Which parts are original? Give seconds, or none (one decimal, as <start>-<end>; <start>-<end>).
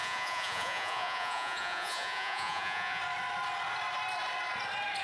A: 3.0-5.0